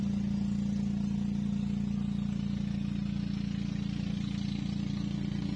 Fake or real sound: real